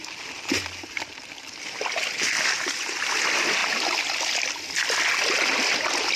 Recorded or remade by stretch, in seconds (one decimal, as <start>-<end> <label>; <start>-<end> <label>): 0.0-1.2 remade; 1.2-6.2 recorded